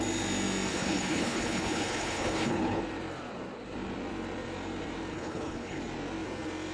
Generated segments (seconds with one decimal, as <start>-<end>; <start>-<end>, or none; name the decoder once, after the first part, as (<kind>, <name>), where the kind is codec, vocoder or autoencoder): 0.7-2.8 (codec, HILCodec); 5.1-5.8